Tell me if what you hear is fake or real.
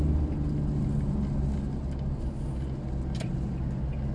real